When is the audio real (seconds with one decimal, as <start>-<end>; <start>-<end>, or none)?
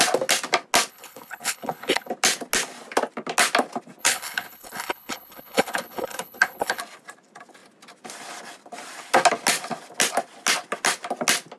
0.0-0.9; 2.1-4.0; 6.8-11.6